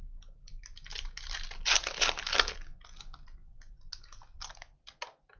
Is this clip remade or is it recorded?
recorded